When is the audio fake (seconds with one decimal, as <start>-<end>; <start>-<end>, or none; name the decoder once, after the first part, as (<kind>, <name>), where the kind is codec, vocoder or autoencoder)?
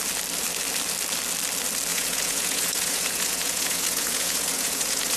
1.9-5.2 (vocoder, Vocos)